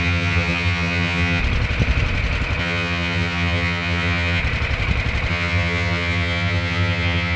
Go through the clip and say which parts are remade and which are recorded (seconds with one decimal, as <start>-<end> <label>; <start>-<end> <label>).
0.0-1.4 remade; 1.4-2.6 recorded; 2.6-4.4 remade; 4.4-5.3 recorded; 5.3-7.4 remade